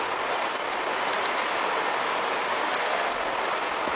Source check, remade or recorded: recorded